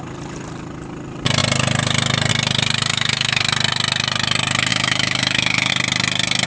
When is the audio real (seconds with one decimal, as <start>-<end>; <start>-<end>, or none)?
0.0-2.9; 3.4-4.7; 5.7-6.5